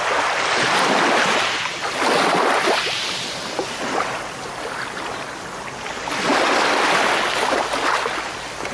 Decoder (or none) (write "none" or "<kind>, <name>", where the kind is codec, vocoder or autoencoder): none